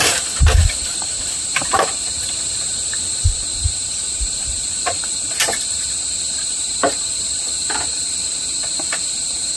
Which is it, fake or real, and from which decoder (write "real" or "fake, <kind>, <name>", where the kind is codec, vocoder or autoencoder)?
fake, vocoder, BigVGAN v2